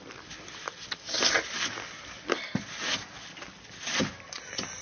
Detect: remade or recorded recorded